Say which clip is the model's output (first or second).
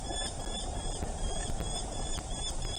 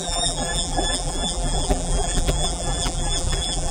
second